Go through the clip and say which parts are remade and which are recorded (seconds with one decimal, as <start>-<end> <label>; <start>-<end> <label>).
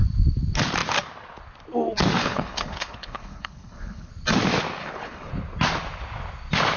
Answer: 0.0-2.2 recorded; 2.2-4.1 remade; 4.1-4.8 recorded; 4.8-5.3 remade; 5.3-6.8 recorded